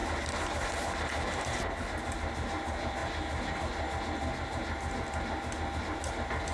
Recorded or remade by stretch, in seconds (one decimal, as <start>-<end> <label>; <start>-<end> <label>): 0.0-6.5 recorded